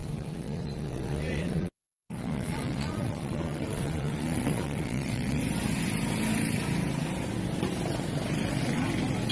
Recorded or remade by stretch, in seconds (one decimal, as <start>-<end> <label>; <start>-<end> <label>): 0.0-5.4 remade; 5.4-9.3 recorded